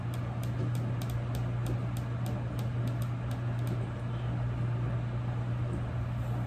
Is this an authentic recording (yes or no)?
yes